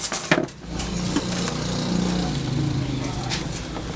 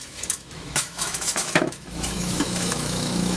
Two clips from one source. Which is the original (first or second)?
first